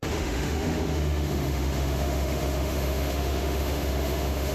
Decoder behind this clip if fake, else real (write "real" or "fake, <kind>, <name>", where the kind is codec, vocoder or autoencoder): fake, autoencoder, DAC-VAE